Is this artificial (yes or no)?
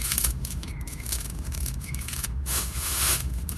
yes